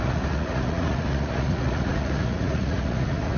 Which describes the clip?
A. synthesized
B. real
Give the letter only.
A